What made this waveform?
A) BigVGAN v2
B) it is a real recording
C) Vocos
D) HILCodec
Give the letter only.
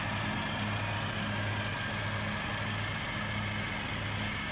B